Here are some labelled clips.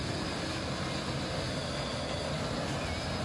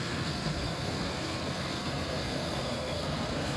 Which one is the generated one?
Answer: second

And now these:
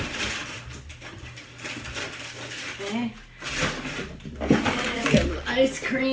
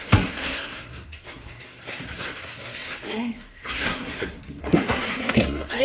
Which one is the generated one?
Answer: second